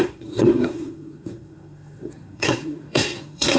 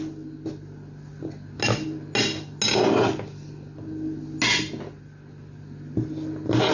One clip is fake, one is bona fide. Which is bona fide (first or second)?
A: second